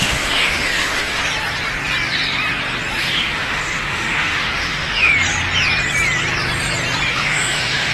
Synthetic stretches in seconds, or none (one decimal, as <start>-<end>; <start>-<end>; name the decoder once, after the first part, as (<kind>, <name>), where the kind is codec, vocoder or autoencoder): 0.0-1.2 (autoencoder, DAC-VAE); 3.0-5.1; 7.1-7.9